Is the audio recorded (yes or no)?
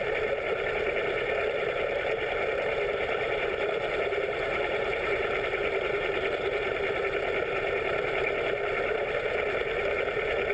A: no